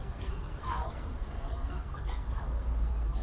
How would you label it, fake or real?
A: fake